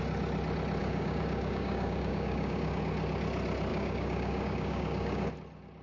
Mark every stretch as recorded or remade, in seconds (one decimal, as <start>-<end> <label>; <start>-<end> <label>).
0.0-0.8 recorded; 0.8-2.8 remade; 2.8-3.7 recorded; 3.7-5.3 remade; 5.3-5.8 recorded